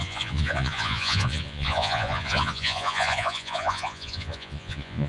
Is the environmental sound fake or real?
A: fake